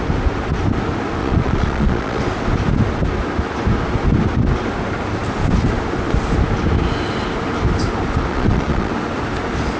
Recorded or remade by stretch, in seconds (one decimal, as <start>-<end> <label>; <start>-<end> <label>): 0.0-1.2 recorded; 1.2-2.2 remade; 2.2-8.3 recorded; 8.3-8.9 remade; 8.9-9.8 recorded